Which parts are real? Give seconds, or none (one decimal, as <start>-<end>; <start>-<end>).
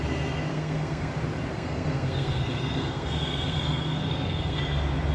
0.0-0.5; 1.1-1.5; 4.6-5.1